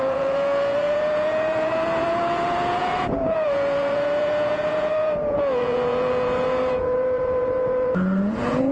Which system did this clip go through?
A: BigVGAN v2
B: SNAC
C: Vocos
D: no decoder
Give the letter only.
C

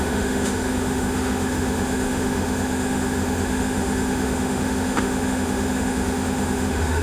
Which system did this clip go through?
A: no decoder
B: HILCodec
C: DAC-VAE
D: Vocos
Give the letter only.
C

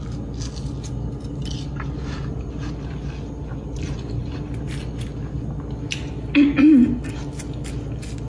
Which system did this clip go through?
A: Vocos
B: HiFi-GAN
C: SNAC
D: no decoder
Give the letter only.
D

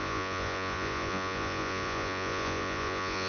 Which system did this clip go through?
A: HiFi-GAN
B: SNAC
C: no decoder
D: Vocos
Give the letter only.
D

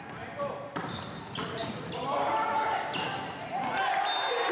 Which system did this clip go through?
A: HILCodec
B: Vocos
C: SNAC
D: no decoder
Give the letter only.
D